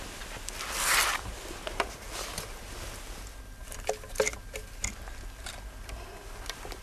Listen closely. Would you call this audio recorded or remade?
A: recorded